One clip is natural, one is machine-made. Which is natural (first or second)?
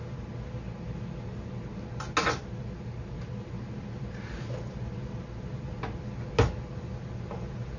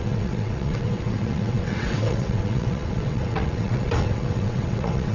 first